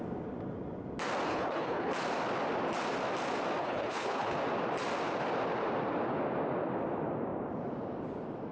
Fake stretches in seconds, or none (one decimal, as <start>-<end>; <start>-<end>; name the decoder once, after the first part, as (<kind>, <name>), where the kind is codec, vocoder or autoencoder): 1.3-1.9 (codec, HILCodec); 3.6-4.4